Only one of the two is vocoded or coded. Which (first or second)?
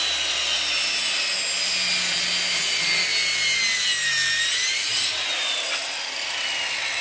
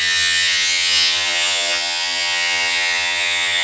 second